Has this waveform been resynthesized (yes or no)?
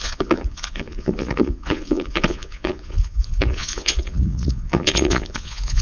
yes